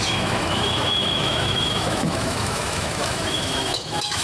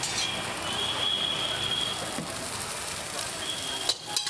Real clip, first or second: second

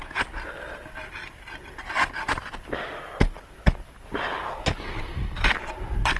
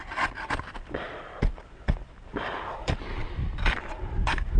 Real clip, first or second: first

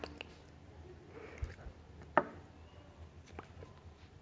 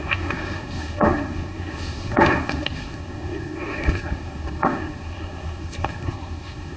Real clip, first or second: first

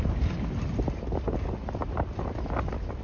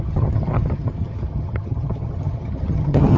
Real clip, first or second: first